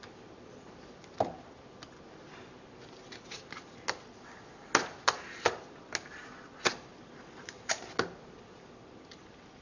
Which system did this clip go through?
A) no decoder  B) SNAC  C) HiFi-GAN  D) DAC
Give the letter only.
A